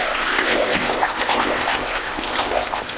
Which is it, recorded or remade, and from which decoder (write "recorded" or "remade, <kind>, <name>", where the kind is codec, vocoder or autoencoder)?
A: remade, codec, ZipCodec